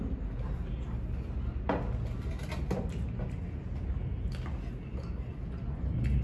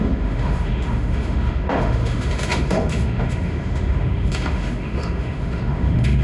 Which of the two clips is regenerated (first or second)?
second